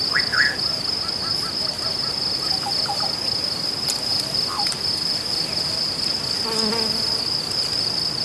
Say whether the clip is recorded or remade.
recorded